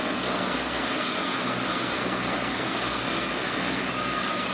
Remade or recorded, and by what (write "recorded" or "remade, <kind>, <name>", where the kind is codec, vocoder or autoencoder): remade, codec, SNAC